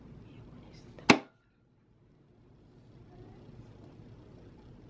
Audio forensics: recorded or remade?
recorded